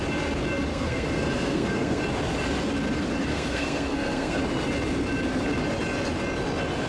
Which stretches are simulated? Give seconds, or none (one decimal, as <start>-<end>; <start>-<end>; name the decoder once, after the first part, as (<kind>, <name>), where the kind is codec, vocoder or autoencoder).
0.7-2.0 (codec, SNAC); 3.3-4.4